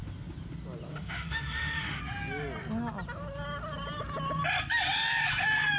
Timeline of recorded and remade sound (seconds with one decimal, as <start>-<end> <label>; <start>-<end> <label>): 0.0-0.9 recorded; 0.9-2.0 remade; 2.0-5.8 recorded